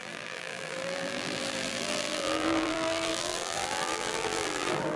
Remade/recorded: remade